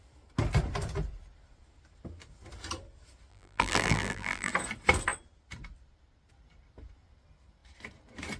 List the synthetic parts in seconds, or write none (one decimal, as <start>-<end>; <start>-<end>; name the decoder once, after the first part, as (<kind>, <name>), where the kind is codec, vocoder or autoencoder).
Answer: 3.3-4.5 (vocoder, BigVGAN v2)